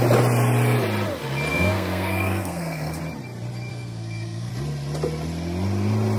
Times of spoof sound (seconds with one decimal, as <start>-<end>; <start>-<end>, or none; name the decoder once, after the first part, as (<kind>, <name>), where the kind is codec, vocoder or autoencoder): 1.5-3.0 (codec, SNAC); 3.7-4.5

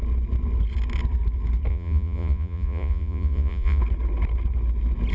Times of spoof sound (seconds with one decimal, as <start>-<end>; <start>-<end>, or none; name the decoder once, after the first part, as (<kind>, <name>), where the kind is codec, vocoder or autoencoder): 1.7-3.8 (vocoder, Vocos)

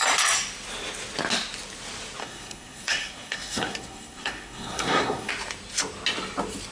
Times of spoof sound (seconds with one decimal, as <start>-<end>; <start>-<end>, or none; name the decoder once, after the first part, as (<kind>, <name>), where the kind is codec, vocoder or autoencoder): 2.2-5.3 (codec, SNAC)

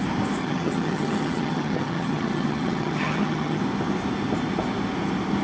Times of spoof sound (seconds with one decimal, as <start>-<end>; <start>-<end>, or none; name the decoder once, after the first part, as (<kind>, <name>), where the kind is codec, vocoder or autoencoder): 0.4-3.6 (vocoder, HiFi-GAN)

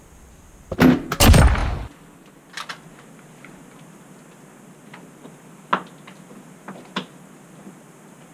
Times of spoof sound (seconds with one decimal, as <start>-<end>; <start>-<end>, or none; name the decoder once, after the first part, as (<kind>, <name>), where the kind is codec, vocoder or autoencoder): none

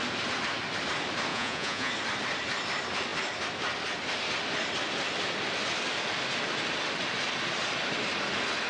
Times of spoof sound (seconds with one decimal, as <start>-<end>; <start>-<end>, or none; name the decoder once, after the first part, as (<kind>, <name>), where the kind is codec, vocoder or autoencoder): 1.3-1.9 (vocoder, Vocos)